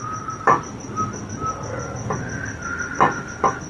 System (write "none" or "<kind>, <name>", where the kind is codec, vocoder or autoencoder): none